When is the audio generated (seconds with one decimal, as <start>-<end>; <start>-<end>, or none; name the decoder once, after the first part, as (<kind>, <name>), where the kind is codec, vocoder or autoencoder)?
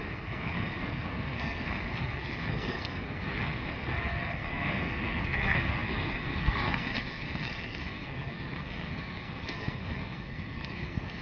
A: 0.0-11.2 (codec, SNAC)